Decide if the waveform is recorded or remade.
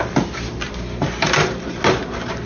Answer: recorded